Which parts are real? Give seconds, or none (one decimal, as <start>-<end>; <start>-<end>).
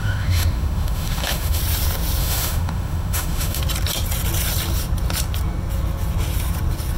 1.6-2.2; 3.6-7.0